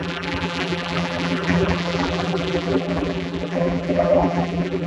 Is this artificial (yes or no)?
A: yes